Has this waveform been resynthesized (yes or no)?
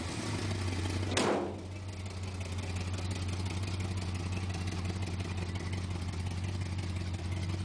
no